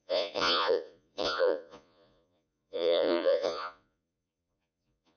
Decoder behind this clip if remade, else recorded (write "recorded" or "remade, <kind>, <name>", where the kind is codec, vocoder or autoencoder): remade, vocoder, Vocos